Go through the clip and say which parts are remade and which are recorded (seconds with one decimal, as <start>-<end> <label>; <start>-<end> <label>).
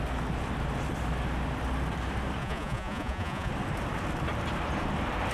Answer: 0.0-2.4 recorded; 2.4-3.5 remade; 3.5-5.3 recorded